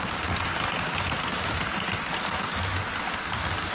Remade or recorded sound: recorded